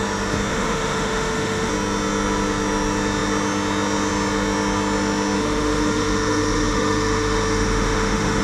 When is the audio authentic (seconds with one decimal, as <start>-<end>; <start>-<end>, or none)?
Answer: 0.0-0.5; 1.7-5.4